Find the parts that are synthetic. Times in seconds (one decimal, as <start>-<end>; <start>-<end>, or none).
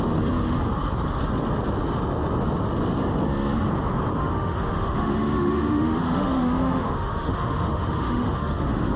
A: 4.2-9.0